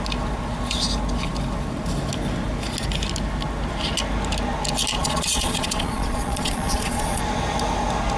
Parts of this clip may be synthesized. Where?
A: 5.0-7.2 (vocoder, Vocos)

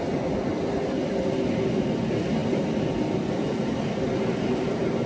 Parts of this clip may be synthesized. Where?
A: none

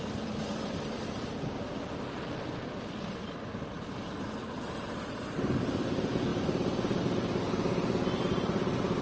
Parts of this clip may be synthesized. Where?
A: none

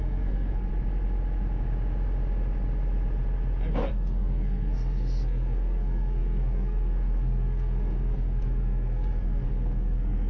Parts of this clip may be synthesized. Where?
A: 0.0-0.7 (codec, SNAC); 3.9-10.3

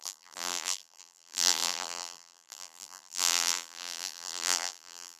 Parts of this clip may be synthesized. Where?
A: 0.0-5.2 (vocoder, BigVGAN v2)

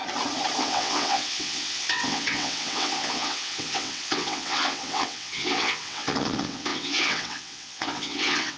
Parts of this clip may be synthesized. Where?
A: 0.6-8.6 (vocoder, WaveNeXt)

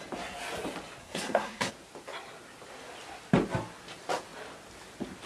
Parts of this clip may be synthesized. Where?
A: 1.0-1.7 (codec, SNAC)